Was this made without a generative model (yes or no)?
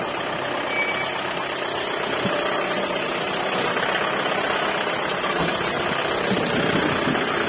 yes